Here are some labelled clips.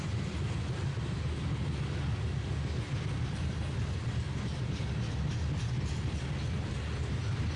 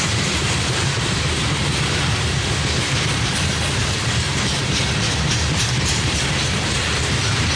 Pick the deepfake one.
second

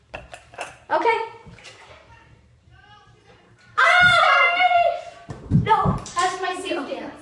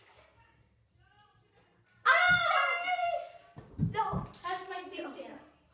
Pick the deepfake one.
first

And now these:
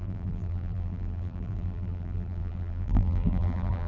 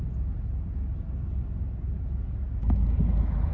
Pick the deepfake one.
first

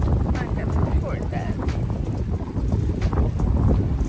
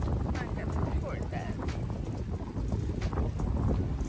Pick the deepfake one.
first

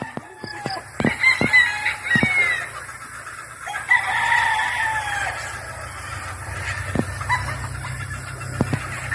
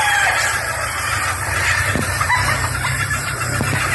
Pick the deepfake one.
second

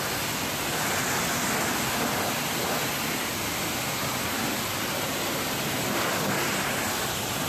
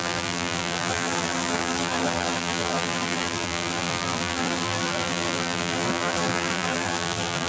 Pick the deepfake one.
second